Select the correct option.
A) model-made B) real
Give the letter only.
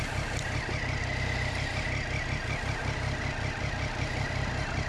B